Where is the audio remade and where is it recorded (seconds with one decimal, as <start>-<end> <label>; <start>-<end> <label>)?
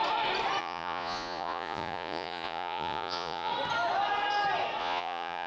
0.0-0.6 recorded; 0.6-3.5 remade; 3.5-4.8 recorded; 4.8-5.5 remade